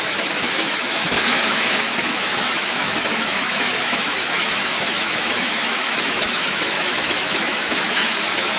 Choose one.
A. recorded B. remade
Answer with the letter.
B